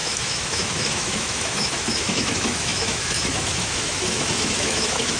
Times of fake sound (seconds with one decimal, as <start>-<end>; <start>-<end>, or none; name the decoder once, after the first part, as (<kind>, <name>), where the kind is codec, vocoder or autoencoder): 0.0-5.2 (autoencoder, DAC-VAE)